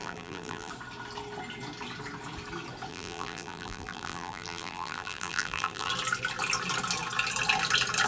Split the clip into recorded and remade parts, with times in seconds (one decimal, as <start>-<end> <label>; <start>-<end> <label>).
0.0-0.7 remade; 0.7-2.9 recorded; 2.9-5.9 remade; 5.9-8.1 recorded